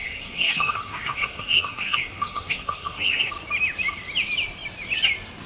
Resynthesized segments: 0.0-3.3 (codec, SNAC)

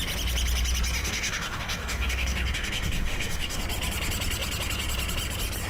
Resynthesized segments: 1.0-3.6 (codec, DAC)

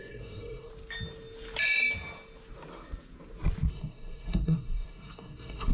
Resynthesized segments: 0.0-0.7 (codec, SNAC); 3.7-5.7

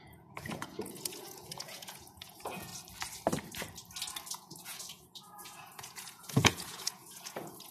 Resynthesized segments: 0.0-2.7 (vocoder, Vocos); 4.3-7.7

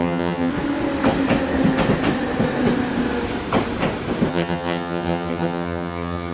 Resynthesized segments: 0.0-0.5 (vocoder, HiFi-GAN); 4.3-6.3